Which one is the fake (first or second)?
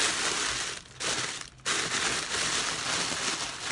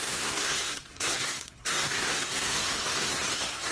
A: second